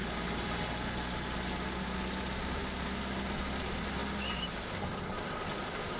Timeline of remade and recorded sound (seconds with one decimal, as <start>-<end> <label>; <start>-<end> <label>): 0.0-6.0 recorded